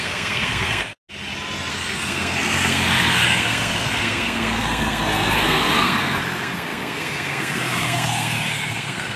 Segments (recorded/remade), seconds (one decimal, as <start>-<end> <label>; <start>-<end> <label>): 0.0-0.9 remade; 0.9-1.7 recorded; 1.7-9.2 remade